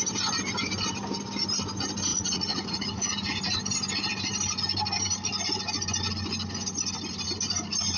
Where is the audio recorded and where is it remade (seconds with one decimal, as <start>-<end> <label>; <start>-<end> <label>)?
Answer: 0.0-2.1 recorded; 2.1-3.6 remade; 3.6-8.0 recorded